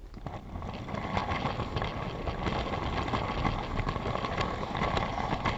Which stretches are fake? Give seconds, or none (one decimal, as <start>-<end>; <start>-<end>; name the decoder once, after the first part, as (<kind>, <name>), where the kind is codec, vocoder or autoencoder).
none